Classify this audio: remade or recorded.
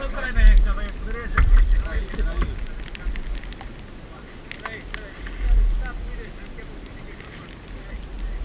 recorded